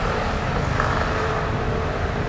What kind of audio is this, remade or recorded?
remade